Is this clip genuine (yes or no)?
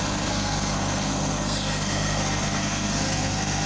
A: no